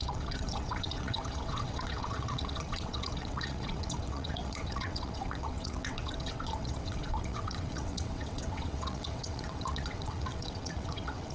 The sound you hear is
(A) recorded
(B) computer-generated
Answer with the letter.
B